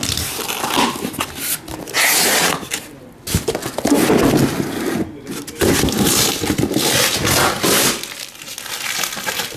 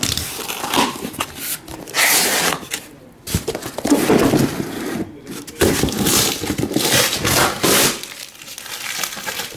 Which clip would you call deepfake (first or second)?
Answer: second